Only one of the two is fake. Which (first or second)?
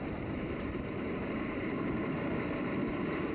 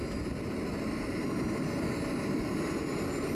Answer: first